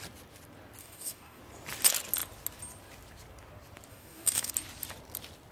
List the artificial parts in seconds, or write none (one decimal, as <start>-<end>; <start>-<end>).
0.8-1.4; 3.9-4.5